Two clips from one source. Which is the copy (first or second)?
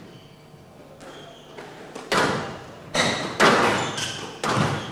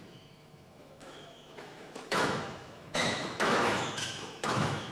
second